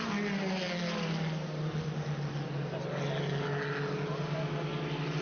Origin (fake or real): real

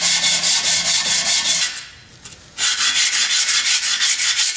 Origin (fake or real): real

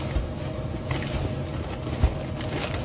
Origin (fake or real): real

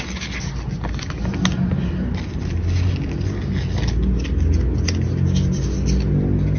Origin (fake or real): real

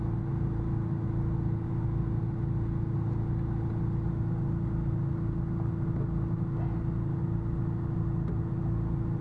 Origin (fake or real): real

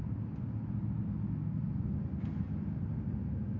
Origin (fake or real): real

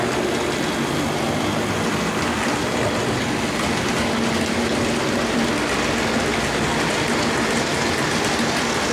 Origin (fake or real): real